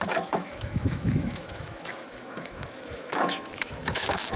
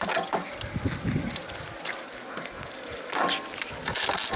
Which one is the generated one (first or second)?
first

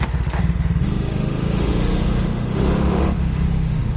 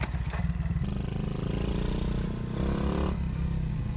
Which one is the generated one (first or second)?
first